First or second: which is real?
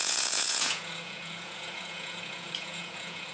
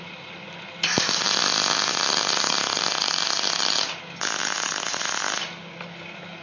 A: second